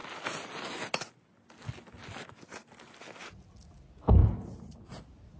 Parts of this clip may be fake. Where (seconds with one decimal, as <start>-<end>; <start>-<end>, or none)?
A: none